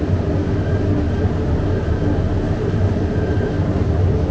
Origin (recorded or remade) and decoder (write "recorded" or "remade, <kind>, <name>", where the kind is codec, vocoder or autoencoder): recorded